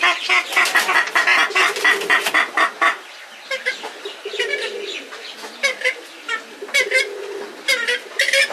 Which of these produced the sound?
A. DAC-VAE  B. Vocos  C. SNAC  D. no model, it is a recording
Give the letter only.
D